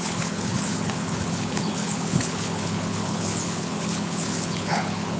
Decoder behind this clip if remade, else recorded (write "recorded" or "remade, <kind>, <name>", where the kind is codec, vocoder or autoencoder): remade, codec, HILCodec